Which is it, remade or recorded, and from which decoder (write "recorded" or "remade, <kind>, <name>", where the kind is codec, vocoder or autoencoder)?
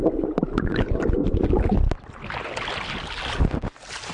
recorded